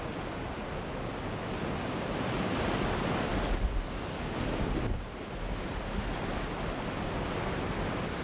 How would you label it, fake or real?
real